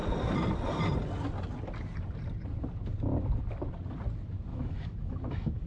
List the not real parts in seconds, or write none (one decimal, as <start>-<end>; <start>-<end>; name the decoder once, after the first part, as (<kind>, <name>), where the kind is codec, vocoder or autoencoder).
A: 4.5-5.7 (autoencoder, DAC-VAE)

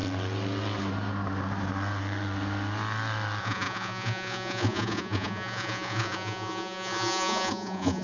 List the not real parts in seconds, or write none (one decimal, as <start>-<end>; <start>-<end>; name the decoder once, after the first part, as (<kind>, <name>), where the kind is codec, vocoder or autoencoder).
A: 3.4-8.0 (vocoder, Vocos)

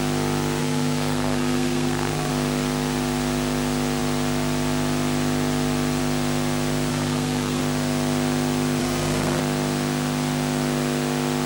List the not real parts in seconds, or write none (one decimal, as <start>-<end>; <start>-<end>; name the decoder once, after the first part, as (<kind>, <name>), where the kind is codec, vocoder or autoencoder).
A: 0.6-2.3 (codec, SNAC); 6.9-7.6; 8.8-9.4

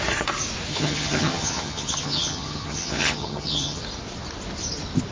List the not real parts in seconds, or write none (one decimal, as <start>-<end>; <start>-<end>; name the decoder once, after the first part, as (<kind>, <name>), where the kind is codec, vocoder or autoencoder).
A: 0.7-3.8 (vocoder, HiFi-GAN)

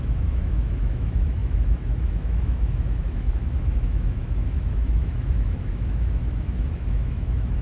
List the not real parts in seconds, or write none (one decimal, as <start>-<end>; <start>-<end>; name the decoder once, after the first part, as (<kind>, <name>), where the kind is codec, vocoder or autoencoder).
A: 0.0-7.6 (autoencoder, DAC-VAE)

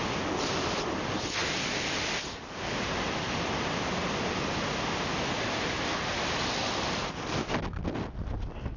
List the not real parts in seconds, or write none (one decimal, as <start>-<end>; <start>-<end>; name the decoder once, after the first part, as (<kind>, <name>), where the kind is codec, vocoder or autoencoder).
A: none

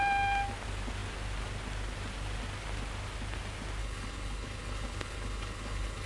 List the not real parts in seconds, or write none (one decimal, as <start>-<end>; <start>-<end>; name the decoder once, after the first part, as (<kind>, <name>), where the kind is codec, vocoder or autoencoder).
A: 3.8-6.1 (codec, HILCodec)

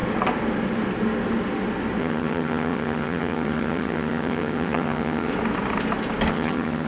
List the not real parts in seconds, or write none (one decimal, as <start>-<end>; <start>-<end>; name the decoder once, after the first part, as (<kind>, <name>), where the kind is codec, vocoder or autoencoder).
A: 2.0-5.3 (vocoder, HiFi-GAN); 6.3-6.9